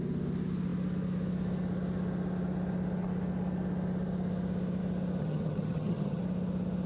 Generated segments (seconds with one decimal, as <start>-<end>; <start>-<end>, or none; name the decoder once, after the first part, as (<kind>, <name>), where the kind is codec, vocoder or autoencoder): 5.2-6.2 (vocoder, HiFi-GAN)